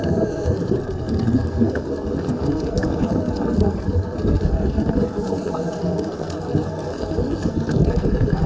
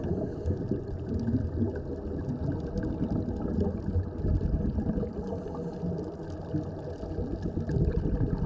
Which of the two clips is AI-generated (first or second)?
first